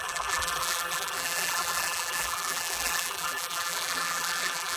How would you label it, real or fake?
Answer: fake